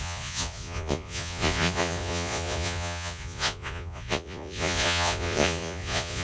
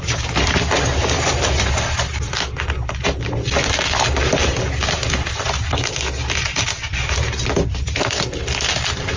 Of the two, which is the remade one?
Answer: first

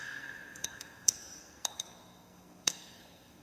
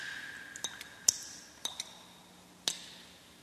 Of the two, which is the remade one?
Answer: first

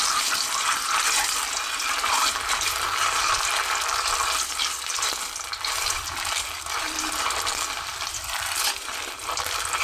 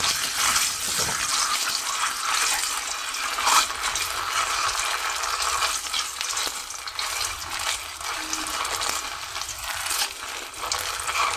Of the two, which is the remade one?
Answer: first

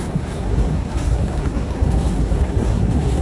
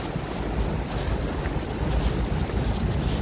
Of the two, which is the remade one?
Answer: first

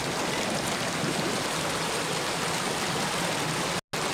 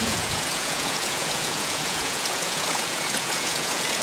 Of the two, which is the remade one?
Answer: second